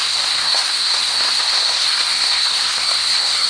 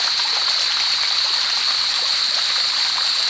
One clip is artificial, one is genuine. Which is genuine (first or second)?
second